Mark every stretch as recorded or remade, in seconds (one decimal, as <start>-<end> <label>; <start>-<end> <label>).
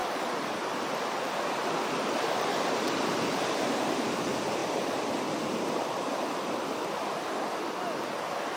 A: 0.0-4.6 remade; 4.6-8.6 recorded